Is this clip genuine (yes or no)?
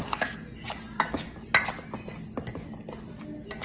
yes